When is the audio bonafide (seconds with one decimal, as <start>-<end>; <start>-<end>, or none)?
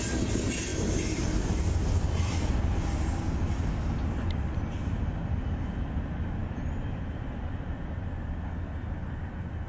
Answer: 0.0-9.7